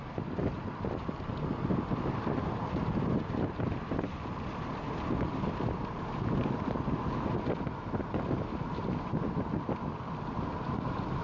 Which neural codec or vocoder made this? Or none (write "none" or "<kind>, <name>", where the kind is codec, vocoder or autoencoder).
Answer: none